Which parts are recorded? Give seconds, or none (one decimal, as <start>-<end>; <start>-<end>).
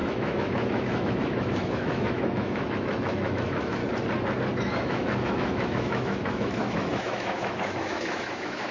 3.8-4.6